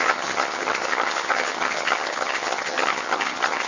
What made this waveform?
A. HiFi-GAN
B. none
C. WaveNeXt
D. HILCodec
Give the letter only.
A